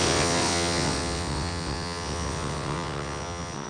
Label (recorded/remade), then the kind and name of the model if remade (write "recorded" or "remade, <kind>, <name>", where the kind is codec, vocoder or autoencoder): remade, vocoder, WaveNeXt